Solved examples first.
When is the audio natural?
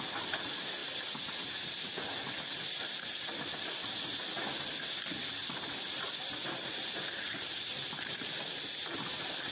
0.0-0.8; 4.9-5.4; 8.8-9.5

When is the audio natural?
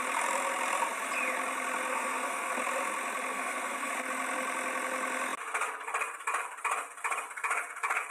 0.0-1.9; 2.5-3.3; 3.9-8.1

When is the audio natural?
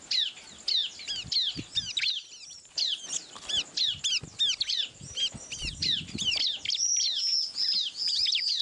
0.0-8.6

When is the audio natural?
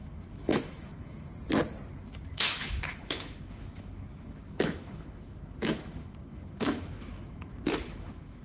1.3-2.3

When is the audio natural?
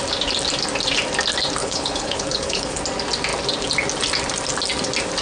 0.0-1.6; 2.8-5.2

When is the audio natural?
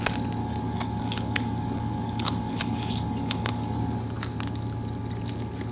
0.0-0.4; 3.8-5.7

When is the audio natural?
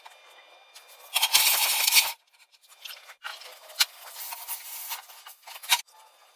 0.0-6.4